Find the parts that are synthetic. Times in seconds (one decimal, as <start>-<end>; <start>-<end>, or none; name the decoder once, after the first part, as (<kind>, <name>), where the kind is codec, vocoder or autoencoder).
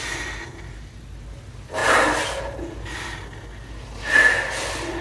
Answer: none